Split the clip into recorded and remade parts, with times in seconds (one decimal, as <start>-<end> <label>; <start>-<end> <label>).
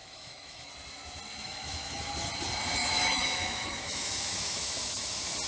0.0-0.7 remade; 0.7-1.3 recorded; 1.3-2.1 remade; 2.1-2.8 recorded; 2.8-5.1 remade; 5.1-5.5 recorded